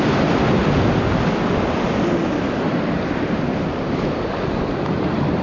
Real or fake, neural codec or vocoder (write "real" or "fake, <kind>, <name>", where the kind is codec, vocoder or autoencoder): real